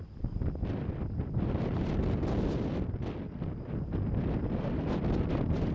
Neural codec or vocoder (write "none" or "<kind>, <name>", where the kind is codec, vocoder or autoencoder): none